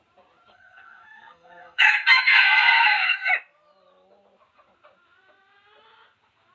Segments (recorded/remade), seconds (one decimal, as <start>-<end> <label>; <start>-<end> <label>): 0.0-0.5 recorded; 0.5-3.3 remade; 3.3-6.5 recorded